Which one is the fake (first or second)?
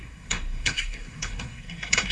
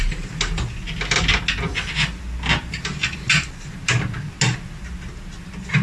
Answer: first